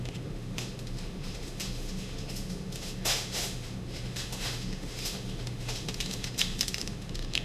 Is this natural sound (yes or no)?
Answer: no